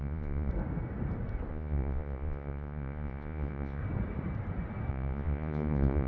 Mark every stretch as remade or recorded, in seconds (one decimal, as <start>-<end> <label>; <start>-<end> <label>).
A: 0.0-0.5 remade; 0.5-1.5 recorded; 1.5-3.8 remade; 3.8-4.9 recorded; 4.9-6.1 remade